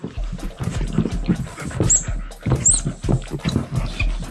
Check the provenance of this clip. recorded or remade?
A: recorded